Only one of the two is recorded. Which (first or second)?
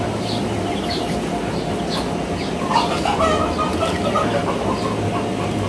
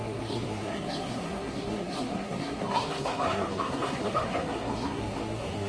first